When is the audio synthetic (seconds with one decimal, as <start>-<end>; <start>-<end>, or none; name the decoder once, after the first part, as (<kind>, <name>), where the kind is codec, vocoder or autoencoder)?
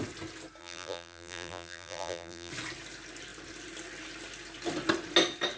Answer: 0.6-2.5 (vocoder, BigVGAN v2)